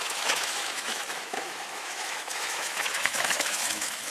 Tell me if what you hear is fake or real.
fake